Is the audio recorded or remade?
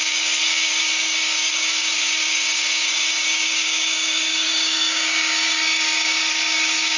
remade